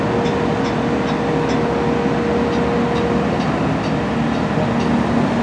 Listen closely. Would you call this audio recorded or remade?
recorded